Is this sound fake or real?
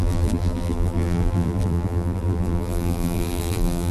fake